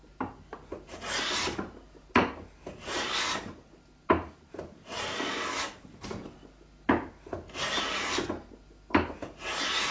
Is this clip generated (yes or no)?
no